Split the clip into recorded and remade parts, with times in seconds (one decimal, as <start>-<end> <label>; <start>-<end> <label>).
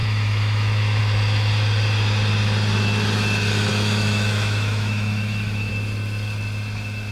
0.0-1.0 remade; 1.0-3.7 recorded; 3.7-5.7 remade; 5.7-7.1 recorded